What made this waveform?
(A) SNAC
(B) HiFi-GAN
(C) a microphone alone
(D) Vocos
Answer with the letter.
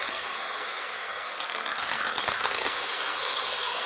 A